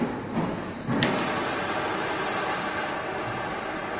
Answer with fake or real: real